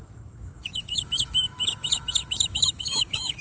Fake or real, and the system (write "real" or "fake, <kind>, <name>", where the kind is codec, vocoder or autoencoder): fake, autoencoder, DAC-VAE